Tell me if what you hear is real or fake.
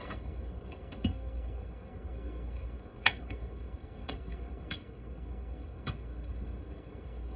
fake